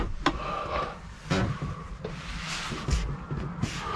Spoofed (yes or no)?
no